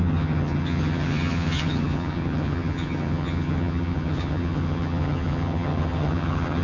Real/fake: fake